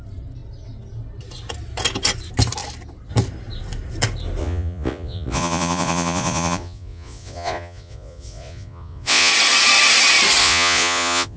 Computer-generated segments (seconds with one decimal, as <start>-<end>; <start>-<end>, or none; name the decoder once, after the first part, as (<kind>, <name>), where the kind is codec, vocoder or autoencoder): 4.4-9.3 (vocoder, Vocos); 10.4-11.4